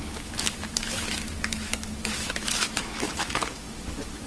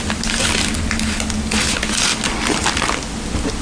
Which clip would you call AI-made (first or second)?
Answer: first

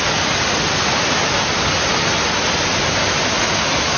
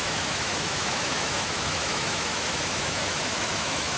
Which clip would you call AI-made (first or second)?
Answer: second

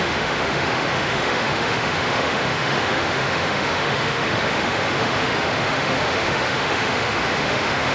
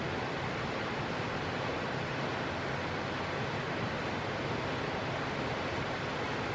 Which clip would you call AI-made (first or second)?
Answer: first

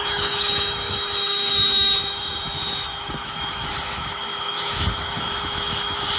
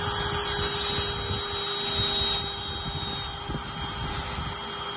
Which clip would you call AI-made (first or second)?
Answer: first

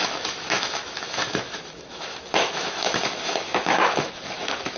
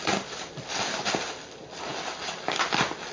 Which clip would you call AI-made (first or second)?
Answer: first